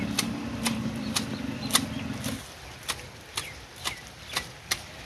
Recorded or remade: recorded